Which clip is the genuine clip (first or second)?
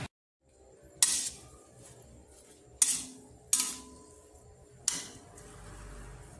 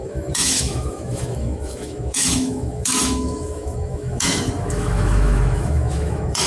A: first